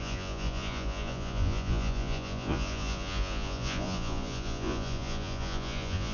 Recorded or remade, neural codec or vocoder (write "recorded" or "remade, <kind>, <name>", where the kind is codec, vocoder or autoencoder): remade, vocoder, Vocos